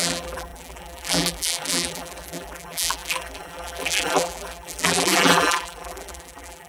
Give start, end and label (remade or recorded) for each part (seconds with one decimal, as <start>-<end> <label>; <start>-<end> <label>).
0.0-6.7 remade